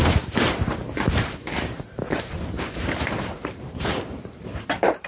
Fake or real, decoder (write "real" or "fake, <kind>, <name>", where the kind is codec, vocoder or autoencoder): fake, vocoder, BigVGAN v2